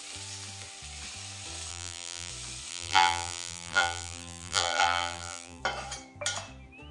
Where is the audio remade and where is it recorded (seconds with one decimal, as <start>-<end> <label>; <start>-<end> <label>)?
0.0-1.7 recorded; 1.7-2.3 remade; 2.3-2.7 recorded; 2.7-5.6 remade; 5.6-6.9 recorded